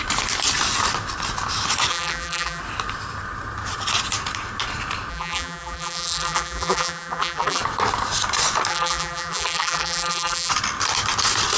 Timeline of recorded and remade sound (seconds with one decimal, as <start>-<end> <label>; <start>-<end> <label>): 0.0-1.9 recorded; 1.9-2.6 remade; 2.6-5.1 recorded; 5.1-7.6 remade; 7.6-8.7 recorded; 8.7-10.5 remade; 10.5-11.6 recorded